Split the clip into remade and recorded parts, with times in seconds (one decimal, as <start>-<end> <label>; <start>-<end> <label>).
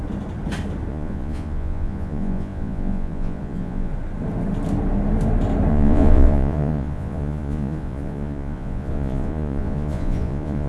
0.0-0.9 recorded; 0.9-3.9 remade; 3.9-5.7 recorded; 5.7-10.7 remade